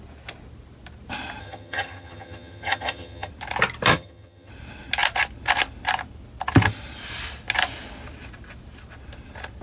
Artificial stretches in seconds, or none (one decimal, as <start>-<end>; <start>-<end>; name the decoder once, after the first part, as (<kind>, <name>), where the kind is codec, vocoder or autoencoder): 1.4-3.3 (vocoder, HiFi-GAN); 3.9-4.5